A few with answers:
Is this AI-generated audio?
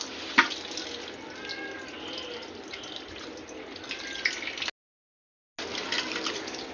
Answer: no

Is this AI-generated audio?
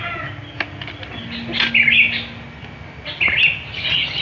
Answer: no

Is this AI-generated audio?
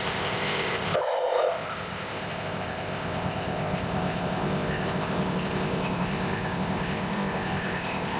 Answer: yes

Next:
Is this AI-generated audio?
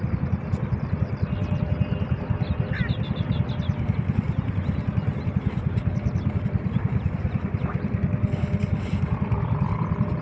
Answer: no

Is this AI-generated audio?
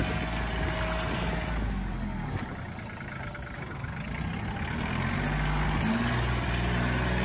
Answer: no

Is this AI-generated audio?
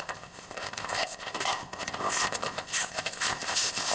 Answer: yes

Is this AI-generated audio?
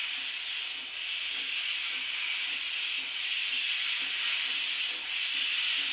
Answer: no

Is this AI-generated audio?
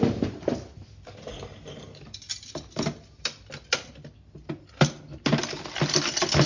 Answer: no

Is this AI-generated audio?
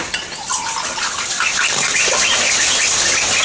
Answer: no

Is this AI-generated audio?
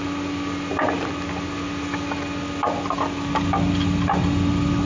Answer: no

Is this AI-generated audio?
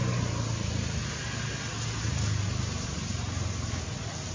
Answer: no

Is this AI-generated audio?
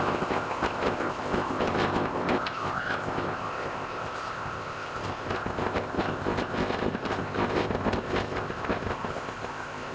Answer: yes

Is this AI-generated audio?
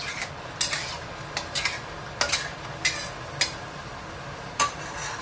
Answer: no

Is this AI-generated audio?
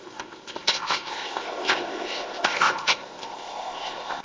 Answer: yes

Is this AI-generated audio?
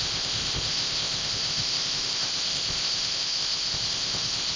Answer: yes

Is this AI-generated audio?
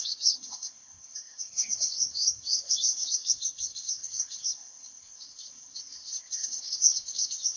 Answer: yes